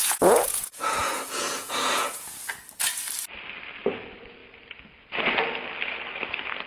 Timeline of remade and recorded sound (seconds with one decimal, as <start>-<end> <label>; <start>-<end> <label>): 0.0-2.5 remade; 2.5-6.7 recorded